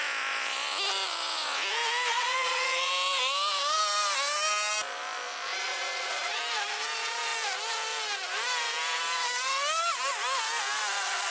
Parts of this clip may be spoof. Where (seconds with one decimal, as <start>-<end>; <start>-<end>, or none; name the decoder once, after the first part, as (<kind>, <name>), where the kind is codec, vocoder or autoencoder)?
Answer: 2.1-2.9 (vocoder, Vocos); 5.5-6.4